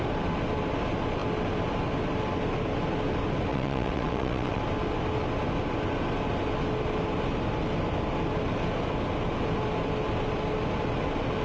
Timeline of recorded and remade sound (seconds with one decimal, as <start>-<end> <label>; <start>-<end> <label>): 0.0-3.5 recorded; 3.5-4.6 remade; 4.6-11.4 recorded